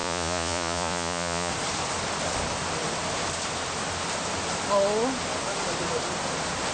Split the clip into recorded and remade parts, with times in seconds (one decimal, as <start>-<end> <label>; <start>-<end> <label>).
0.0-1.5 remade; 1.5-6.7 recorded